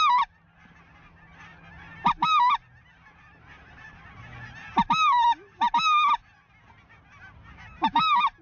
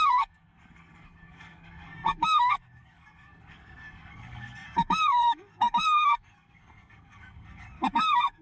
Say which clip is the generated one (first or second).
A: second